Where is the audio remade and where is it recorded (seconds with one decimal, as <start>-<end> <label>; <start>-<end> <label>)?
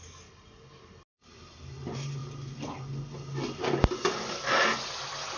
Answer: 0.0-5.4 recorded